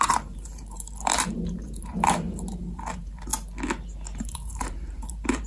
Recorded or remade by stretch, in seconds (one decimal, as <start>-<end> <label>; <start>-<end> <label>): 0.0-3.3 remade; 3.3-4.2 recorded; 4.2-5.5 remade